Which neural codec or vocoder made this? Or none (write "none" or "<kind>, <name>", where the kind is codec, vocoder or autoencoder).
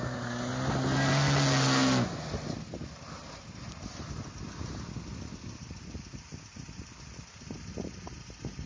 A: none